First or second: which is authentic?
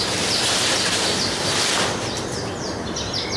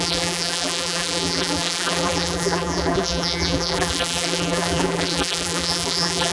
first